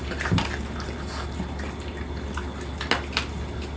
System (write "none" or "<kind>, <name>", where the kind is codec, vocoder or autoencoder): none